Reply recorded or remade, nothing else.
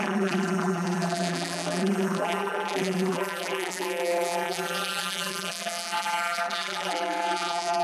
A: remade